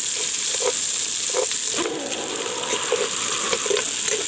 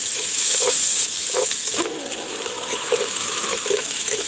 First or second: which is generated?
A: second